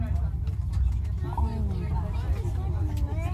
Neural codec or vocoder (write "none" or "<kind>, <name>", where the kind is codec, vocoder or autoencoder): none